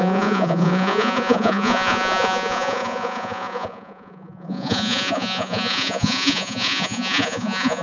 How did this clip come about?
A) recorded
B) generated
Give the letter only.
B